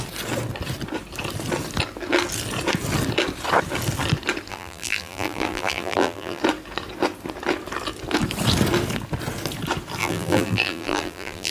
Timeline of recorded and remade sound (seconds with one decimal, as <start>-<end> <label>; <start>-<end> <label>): 0.0-4.5 recorded; 4.5-6.4 remade; 6.4-10.0 recorded; 10.0-11.5 remade